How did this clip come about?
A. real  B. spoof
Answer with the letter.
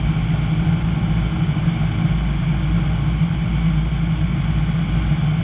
A